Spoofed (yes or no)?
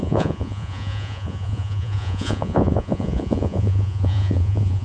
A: yes